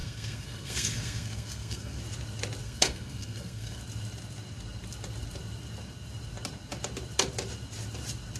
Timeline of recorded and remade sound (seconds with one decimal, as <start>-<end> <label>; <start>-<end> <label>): 0.0-2.0 remade; 2.0-2.6 recorded; 2.6-3.8 remade; 3.8-8.4 recorded